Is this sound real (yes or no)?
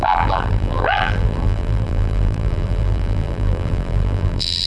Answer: no